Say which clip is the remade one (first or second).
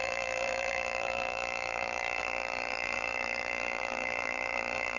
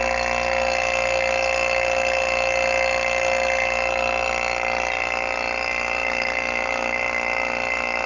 first